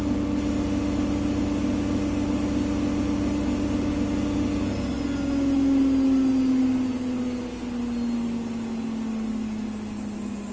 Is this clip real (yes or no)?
yes